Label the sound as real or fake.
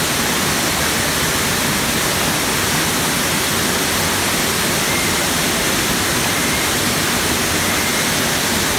real